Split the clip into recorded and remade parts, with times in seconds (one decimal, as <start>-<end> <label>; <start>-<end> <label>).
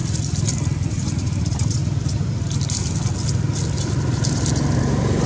0.0-0.9 recorded; 0.9-1.8 remade; 1.8-4.8 recorded; 4.8-5.3 remade